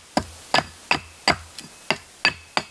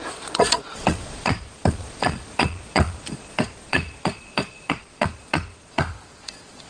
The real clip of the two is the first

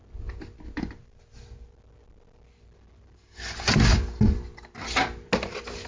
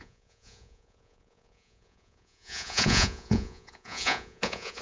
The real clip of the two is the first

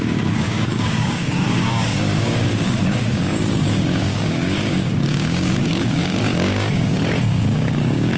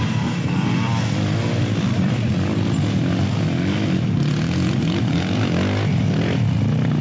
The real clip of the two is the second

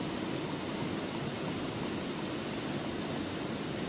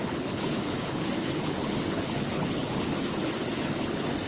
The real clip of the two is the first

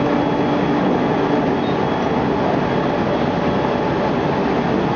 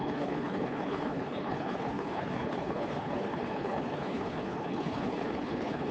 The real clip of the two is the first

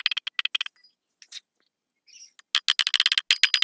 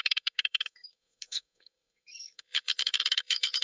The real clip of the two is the first